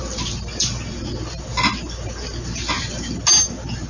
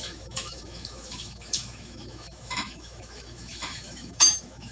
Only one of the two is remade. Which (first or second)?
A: second